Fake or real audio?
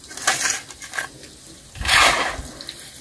real